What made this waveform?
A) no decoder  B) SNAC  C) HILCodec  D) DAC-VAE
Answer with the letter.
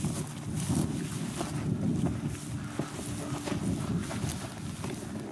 A